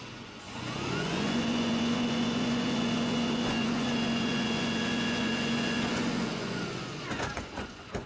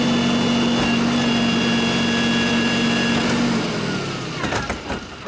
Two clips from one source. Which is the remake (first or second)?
first